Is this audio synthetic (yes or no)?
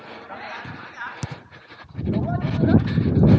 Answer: no